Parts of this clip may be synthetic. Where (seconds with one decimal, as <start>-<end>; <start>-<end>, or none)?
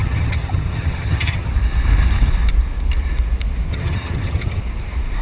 0.0-1.5; 3.7-4.6